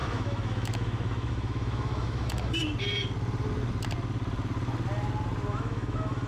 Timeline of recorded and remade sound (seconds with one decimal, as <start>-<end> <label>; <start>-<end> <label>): 0.0-2.6 remade; 2.6-5.5 recorded; 5.5-6.3 remade